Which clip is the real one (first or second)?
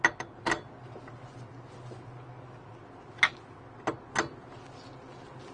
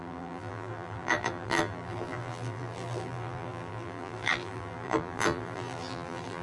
first